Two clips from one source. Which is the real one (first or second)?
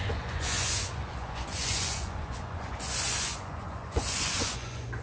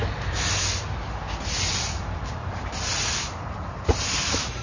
second